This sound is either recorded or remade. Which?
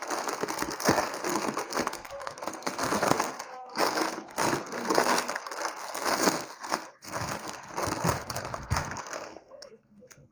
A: remade